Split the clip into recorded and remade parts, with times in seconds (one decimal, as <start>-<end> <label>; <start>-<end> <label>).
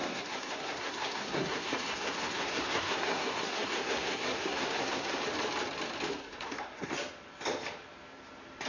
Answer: 0.0-5.2 remade; 5.2-6.1 recorded; 6.1-6.9 remade; 6.9-8.7 recorded